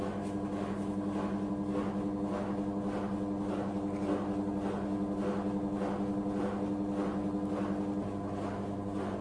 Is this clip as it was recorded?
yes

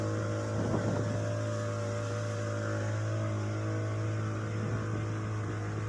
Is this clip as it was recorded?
yes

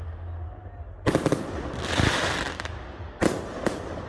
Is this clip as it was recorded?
yes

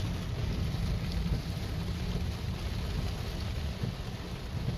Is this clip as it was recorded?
yes